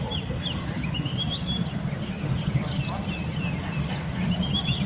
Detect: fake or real real